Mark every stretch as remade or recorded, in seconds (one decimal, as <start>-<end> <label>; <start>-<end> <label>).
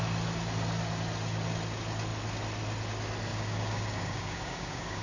0.0-3.3 recorded; 3.3-5.0 remade